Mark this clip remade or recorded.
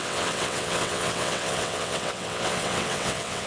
remade